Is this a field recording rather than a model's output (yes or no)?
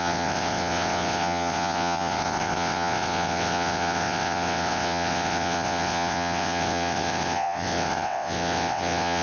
no